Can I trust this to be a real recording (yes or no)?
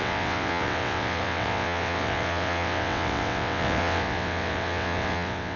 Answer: no